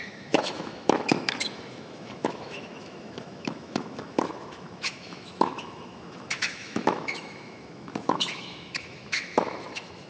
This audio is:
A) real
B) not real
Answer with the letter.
B